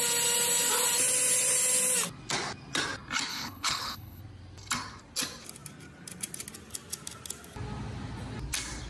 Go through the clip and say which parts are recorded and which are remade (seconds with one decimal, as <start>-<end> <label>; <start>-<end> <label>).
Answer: 0.0-3.3 recorded; 3.3-4.2 remade; 4.2-8.9 recorded